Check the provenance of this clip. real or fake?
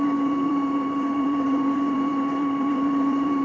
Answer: fake